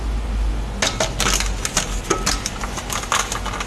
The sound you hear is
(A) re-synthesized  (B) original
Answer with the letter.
B